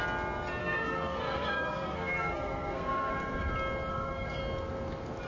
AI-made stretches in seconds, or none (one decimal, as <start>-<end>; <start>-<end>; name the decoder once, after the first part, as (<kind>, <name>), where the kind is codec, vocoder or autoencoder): 0.6-3.5 (codec, SNAC); 3.9-4.4